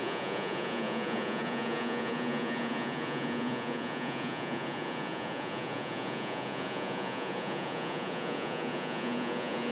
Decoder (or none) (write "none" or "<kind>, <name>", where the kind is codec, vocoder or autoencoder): vocoder, Vocos